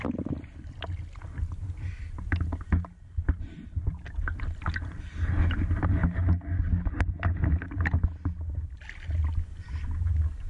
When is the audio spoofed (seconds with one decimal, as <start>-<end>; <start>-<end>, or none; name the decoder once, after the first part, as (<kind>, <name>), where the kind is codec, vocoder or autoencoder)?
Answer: none